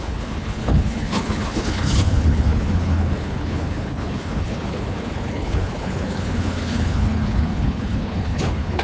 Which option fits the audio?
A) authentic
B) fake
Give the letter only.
B